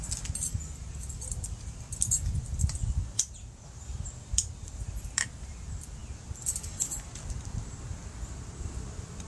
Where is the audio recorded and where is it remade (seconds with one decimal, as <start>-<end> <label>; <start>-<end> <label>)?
0.0-9.3 recorded